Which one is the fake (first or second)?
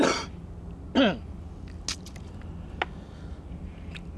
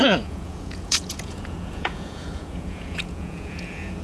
second